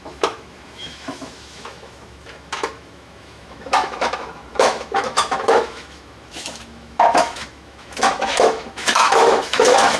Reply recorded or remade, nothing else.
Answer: remade